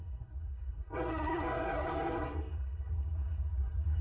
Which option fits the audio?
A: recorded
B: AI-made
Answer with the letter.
B